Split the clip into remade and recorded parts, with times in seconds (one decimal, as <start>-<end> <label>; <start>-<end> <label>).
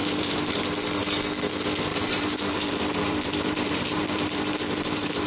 0.0-0.6 remade; 0.6-1.9 recorded; 1.9-5.3 remade